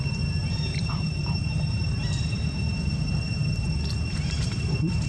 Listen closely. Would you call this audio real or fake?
fake